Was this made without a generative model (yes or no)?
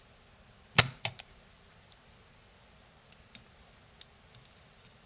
yes